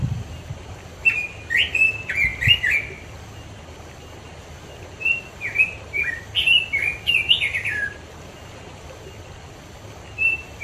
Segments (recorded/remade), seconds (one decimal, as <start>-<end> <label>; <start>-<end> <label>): 0.0-10.6 recorded